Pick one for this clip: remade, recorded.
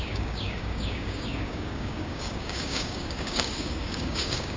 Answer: remade